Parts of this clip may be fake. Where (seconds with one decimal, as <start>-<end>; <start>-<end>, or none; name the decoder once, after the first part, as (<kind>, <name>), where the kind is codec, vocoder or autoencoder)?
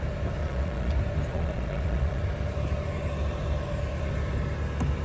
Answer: 0.4-0.9 (vocoder, Vocos); 1.3-2.2